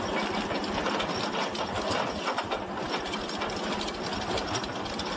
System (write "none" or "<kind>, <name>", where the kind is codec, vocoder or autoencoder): none